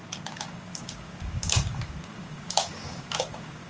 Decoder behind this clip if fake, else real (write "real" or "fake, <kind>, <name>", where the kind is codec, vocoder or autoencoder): fake, codec, DAC